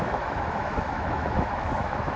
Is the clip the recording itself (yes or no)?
no